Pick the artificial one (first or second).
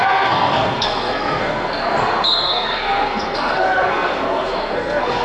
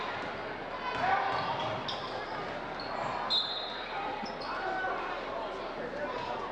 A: first